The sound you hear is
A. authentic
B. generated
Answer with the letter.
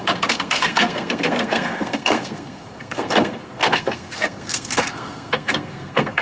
B